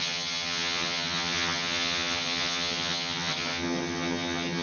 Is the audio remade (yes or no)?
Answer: yes